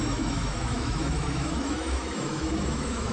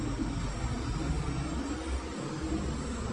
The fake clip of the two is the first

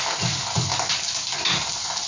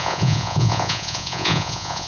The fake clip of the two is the second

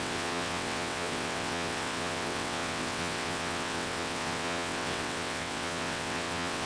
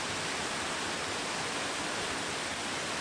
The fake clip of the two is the first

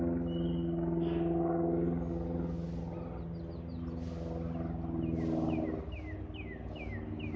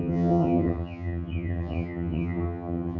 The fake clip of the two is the second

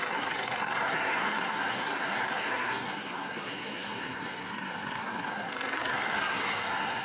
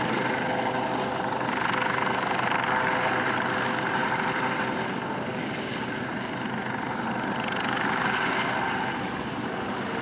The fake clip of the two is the first